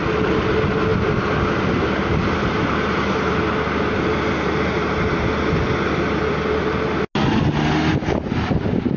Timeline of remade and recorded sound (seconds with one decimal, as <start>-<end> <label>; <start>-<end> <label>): 0.0-9.0 recorded